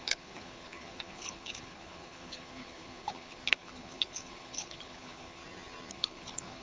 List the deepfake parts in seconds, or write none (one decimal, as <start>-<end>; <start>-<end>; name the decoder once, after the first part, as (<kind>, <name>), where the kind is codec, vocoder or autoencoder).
0.0-5.4 (codec, HILCodec); 5.9-6.6